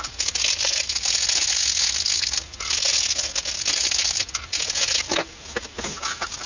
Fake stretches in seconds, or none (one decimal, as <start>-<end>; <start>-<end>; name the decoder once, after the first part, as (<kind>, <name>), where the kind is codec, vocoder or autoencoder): none